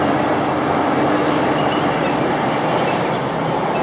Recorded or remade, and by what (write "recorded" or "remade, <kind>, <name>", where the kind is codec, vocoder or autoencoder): recorded